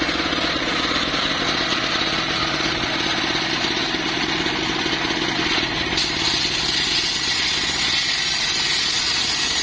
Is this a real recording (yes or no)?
yes